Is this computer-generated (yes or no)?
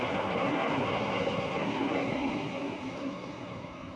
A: yes